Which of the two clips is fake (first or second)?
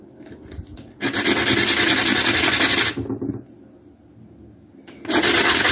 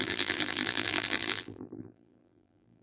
second